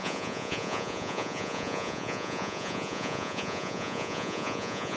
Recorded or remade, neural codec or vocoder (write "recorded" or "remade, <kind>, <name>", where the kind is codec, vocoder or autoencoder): remade, vocoder, Vocos